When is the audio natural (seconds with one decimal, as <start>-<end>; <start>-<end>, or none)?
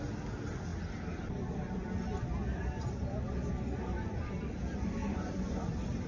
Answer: 0.0-5.0; 5.6-6.1